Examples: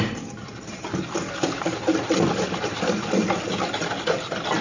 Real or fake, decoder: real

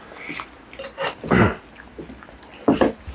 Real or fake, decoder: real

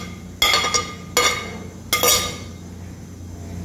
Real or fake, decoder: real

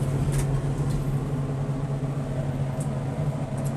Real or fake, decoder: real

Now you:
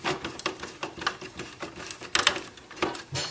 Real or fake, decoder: real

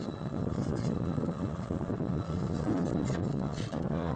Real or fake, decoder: fake, vocoder, Vocos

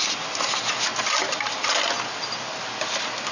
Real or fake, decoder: real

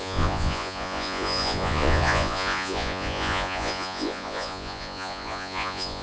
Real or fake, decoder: fake, vocoder, Vocos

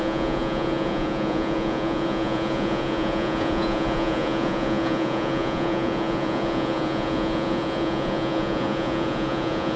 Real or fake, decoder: fake, vocoder, Vocos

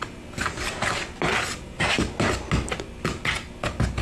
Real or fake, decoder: real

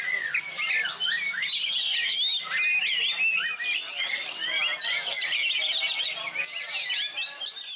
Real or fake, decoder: real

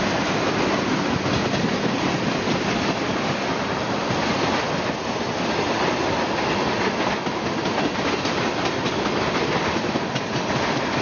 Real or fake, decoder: real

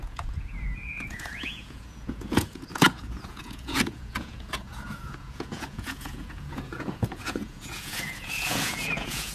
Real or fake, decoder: fake, vocoder, Vocos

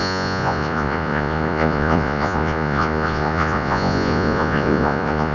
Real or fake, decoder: fake, vocoder, Vocos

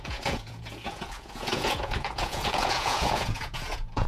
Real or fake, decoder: fake, vocoder, Vocos